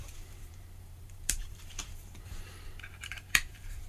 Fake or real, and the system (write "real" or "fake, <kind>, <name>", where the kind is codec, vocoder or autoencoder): fake, vocoder, BigVGAN v2